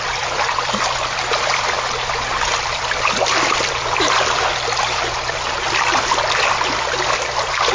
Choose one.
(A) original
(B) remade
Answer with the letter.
A